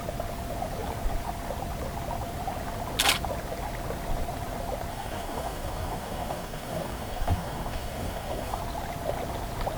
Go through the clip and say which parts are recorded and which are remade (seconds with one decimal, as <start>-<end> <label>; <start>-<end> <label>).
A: 0.0-4.9 recorded; 4.9-8.6 remade; 8.6-9.8 recorded